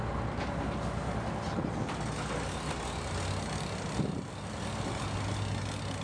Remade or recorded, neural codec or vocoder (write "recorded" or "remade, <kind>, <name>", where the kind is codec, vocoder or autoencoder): recorded